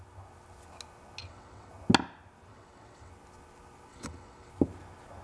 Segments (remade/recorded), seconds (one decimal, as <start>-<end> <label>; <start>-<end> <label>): 0.0-1.2 recorded; 1.2-1.7 remade; 1.7-2.5 recorded; 2.5-3.1 remade; 3.1-3.9 recorded; 3.9-4.5 remade; 4.5-5.2 recorded